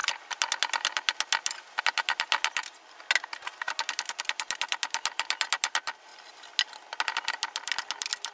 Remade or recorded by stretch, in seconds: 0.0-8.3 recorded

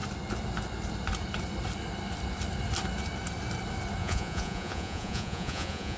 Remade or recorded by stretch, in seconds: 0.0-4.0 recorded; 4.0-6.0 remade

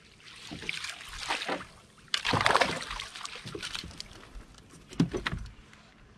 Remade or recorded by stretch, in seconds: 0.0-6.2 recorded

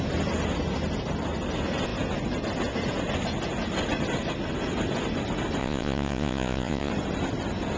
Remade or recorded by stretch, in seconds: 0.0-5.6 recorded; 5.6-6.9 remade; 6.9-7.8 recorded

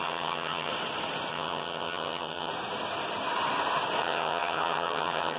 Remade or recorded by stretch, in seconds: 0.0-0.7 remade; 0.7-1.3 recorded; 1.3-2.5 remade; 2.5-4.0 recorded; 4.0-5.4 remade

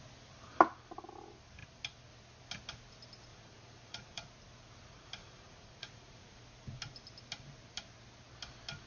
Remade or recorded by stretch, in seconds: 0.0-3.3 recorded; 3.3-4.3 remade; 4.3-5.2 recorded; 5.2-6.4 remade; 6.4-8.9 recorded